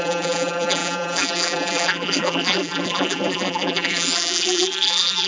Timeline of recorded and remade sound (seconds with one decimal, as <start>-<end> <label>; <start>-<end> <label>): 0.0-5.3 remade